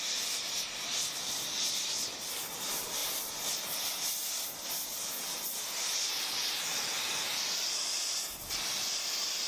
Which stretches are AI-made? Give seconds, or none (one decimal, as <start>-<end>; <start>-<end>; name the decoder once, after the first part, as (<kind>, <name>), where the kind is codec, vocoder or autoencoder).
none